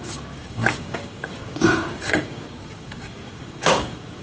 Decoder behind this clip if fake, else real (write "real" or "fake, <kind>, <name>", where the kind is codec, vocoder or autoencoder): fake, codec, DAC